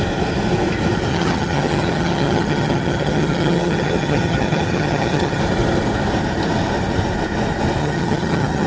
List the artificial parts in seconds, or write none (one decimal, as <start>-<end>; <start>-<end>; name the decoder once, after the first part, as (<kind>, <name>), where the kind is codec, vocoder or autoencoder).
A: 1.1-5.4 (vocoder, HiFi-GAN); 7.8-8.7

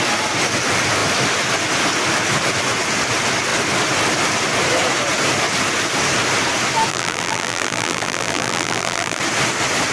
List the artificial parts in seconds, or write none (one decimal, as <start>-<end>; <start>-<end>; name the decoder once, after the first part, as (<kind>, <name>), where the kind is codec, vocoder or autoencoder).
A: 6.9-9.2 (vocoder, BigVGAN v2)

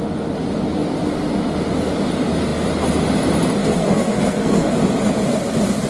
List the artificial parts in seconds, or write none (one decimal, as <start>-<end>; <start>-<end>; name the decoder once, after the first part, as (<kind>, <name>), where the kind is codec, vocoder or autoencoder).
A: 3.6-4.8 (codec, SNAC)

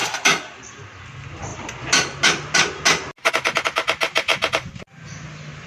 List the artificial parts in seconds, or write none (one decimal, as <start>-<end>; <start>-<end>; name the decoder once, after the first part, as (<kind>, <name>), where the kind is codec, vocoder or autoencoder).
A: none

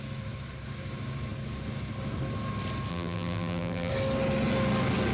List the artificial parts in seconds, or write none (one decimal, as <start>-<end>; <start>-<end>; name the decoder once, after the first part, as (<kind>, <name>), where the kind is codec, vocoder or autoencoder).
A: 2.9-3.9 (vocoder, BigVGAN v2)